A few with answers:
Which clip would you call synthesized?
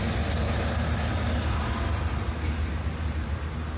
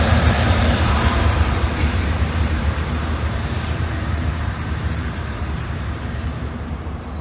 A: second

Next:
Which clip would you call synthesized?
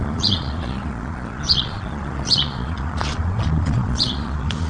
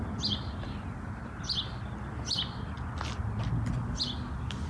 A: first